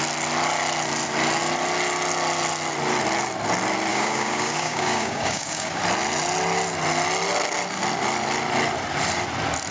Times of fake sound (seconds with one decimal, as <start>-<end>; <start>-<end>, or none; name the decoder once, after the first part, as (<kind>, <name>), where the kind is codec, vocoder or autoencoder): 3.9-5.8 (codec, DAC)